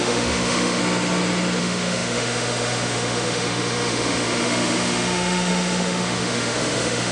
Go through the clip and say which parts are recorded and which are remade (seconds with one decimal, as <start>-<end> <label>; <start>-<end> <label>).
0.0-0.8 remade; 0.8-1.6 recorded; 1.6-7.1 remade

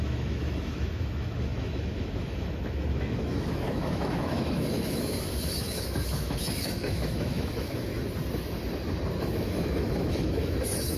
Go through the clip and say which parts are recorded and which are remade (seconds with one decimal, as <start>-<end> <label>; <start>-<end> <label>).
0.0-7.9 remade; 7.9-9.2 recorded; 9.2-11.0 remade